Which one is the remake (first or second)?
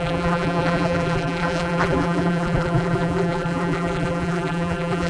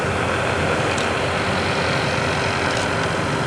first